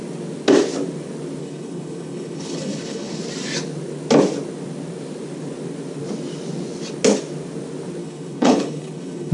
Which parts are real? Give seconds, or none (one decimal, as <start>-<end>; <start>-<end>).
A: 0.0-1.4; 3.2-8.0

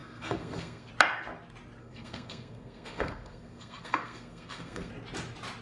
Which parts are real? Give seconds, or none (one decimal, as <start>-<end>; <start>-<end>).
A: 0.9-1.8; 4.9-5.6

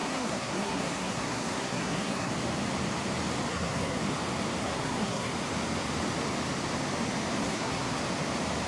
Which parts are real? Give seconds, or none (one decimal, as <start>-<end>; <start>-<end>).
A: 2.3-3.5; 4.0-4.6; 5.3-7.4; 8.0-8.7

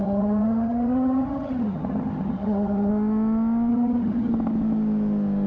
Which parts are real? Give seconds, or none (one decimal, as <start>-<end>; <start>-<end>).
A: 2.9-3.7; 4.3-5.5

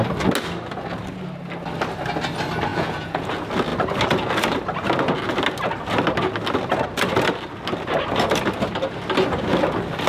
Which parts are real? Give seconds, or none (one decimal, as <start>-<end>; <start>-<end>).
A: 0.0-2.7; 3.3-10.1

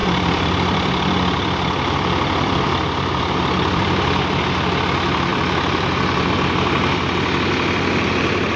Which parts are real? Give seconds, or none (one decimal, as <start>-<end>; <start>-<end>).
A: 4.4-5.3; 6.3-8.6

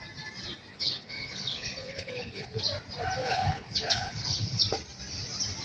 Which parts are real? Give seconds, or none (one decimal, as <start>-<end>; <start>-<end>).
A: 0.0-0.7; 2.6-3.2; 4.6-5.6

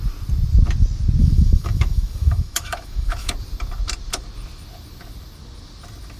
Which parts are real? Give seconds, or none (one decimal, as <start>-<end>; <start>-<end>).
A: 0.0-1.2; 3.3-6.2